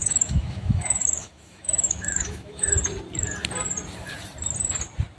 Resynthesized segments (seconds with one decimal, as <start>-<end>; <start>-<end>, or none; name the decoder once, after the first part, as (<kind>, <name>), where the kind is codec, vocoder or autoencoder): 0.0-2.7 (autoencoder, DAC-VAE)